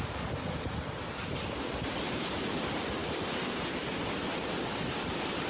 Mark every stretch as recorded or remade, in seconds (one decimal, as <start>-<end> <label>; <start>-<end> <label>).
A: 0.0-5.5 recorded